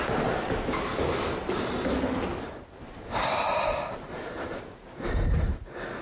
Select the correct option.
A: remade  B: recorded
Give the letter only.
B